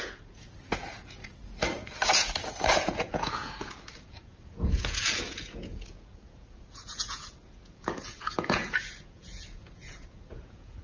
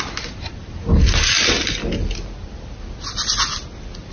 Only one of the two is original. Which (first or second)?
second